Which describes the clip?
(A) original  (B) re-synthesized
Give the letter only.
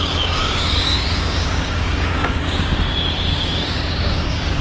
B